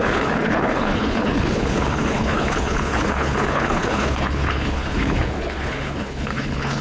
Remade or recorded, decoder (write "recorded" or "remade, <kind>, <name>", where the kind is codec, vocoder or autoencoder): remade, codec, HILCodec